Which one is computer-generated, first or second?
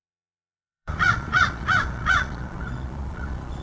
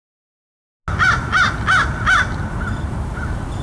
first